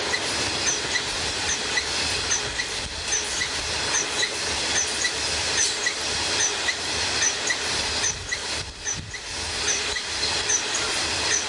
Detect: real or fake real